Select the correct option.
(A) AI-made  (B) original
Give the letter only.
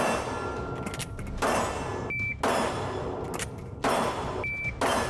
B